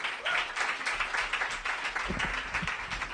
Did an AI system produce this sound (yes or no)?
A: no